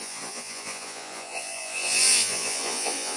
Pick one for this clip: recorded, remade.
remade